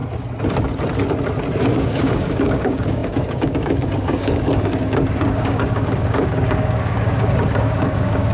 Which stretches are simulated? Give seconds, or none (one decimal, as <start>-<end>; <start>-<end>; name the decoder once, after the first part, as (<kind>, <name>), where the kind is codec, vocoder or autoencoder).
1.6-8.3 (codec, DAC)